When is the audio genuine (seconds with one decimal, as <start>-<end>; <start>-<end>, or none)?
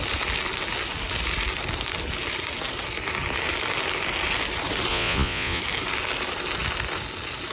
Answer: 0.0-4.9; 5.6-7.5